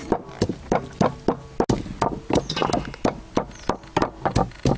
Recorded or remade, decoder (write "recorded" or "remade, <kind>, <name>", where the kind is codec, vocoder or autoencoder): recorded